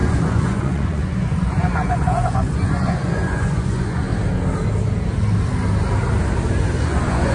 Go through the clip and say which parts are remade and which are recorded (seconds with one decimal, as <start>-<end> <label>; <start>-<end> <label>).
0.0-4.1 remade; 4.1-6.8 recorded; 6.8-7.3 remade